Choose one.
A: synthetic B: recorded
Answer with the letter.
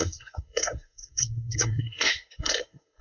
A